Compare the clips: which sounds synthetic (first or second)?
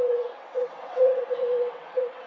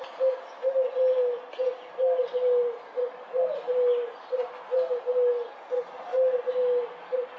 first